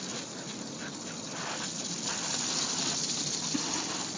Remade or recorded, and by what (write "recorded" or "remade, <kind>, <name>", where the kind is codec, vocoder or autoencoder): recorded